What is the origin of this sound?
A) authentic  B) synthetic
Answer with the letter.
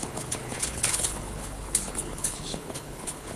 B